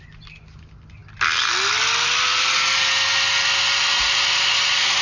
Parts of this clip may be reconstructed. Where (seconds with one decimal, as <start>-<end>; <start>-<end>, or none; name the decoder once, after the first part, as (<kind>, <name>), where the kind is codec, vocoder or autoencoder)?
none